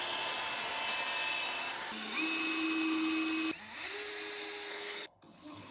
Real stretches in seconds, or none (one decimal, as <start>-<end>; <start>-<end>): 0.0-4.7